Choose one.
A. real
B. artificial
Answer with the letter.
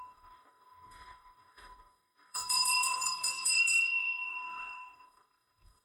B